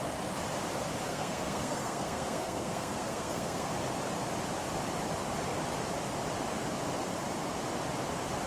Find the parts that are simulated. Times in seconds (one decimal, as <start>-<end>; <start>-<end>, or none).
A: 1.1-3.7